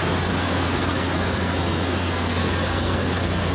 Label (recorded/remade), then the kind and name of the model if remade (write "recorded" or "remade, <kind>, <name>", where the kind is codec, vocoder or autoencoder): remade, codec, SNAC